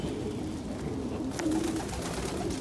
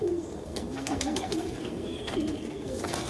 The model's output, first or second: second